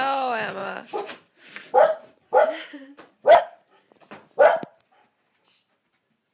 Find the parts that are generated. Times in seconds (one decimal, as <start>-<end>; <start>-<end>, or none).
0.6-3.4